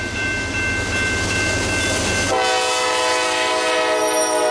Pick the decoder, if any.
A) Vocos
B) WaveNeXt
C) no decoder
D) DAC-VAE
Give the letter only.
C